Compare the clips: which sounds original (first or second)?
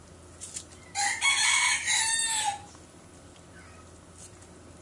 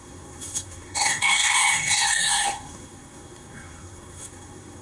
first